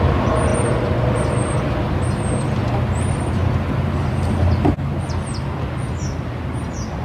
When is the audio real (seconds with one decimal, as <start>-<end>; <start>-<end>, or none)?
0.0-7.0